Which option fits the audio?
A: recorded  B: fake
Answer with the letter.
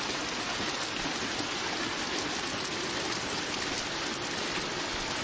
A